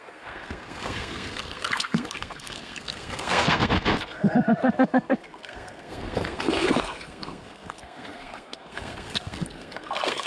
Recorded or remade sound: remade